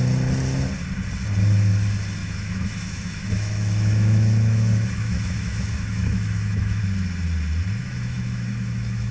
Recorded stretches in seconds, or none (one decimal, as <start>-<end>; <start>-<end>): 0.0-2.2; 6.8-7.8